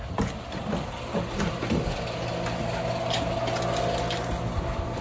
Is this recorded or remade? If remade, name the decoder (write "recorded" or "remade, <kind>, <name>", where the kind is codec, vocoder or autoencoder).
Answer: recorded